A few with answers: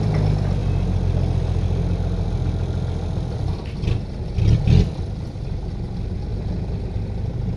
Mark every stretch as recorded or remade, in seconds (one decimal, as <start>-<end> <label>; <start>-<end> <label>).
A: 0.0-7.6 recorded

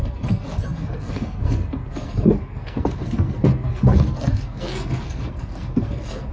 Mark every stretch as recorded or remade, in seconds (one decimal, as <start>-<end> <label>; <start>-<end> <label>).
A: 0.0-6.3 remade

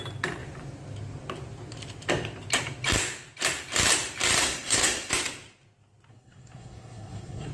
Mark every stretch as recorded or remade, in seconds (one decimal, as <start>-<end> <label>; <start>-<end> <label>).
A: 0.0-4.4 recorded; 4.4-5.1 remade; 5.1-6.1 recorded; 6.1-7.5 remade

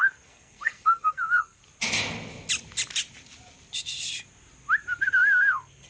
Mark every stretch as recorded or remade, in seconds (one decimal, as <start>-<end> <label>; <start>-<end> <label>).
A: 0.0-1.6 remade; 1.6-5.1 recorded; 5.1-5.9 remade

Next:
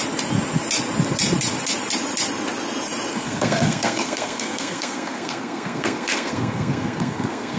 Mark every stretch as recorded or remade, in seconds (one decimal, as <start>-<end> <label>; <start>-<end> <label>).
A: 0.0-3.1 recorded; 3.1-7.6 remade